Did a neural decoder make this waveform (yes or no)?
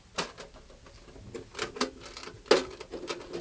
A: no